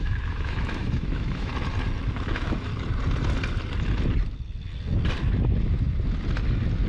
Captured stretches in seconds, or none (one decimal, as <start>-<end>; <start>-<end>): 1.5-2.1; 2.7-6.9